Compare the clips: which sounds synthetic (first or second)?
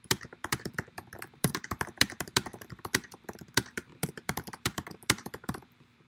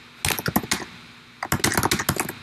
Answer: first